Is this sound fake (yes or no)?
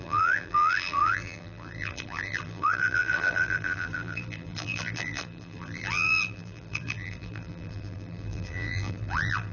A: yes